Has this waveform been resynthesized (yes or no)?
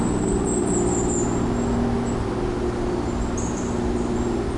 no